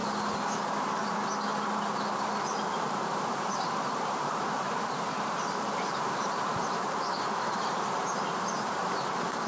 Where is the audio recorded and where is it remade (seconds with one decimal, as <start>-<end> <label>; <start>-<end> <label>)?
0.0-2.8 recorded; 2.8-9.5 remade